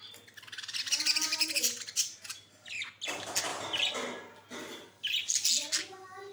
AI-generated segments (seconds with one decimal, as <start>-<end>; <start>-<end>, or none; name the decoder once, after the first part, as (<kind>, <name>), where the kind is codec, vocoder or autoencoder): 1.3-2.2 (vocoder, BigVGAN v2)